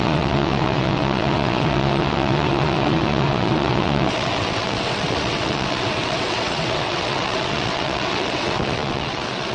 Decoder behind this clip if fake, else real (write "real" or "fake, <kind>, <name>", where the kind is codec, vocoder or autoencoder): fake, vocoder, WaveNeXt